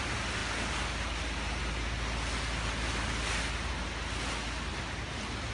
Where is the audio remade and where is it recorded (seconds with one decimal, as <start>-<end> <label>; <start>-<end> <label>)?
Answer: 0.0-5.5 recorded